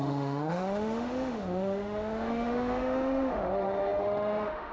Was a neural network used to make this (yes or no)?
yes